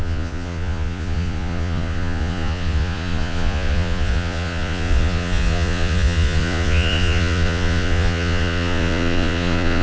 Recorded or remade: remade